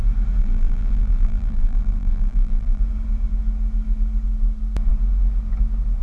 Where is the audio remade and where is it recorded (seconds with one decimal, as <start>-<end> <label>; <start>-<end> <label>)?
0.0-0.4 recorded; 0.4-2.8 remade; 2.8-6.0 recorded